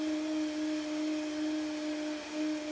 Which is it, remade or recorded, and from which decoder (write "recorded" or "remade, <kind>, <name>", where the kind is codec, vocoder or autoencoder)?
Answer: recorded